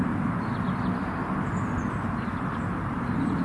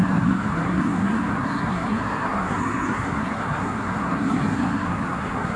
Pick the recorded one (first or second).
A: first